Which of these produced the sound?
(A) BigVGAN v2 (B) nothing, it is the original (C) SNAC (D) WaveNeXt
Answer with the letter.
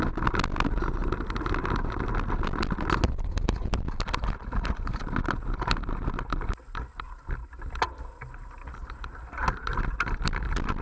B